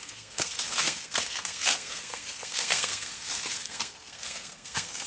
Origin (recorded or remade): remade